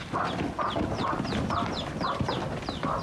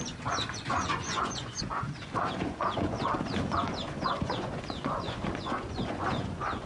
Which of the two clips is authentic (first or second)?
first